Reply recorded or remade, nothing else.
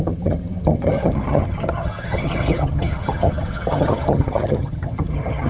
remade